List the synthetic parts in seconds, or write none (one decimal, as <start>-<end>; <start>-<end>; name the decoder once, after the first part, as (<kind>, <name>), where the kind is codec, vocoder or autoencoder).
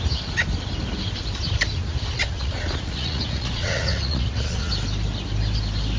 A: 2.2-4.7 (vocoder, Vocos)